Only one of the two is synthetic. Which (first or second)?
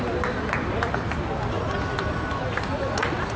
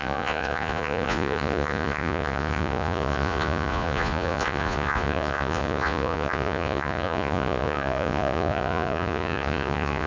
second